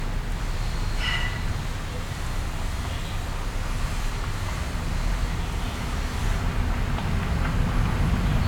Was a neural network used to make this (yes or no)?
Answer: no